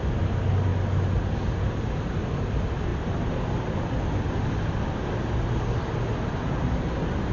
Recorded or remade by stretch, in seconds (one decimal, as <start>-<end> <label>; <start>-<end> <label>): 0.0-7.3 recorded